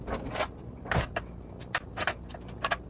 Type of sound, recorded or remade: recorded